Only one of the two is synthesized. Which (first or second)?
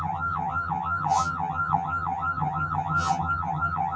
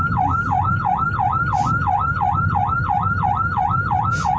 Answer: first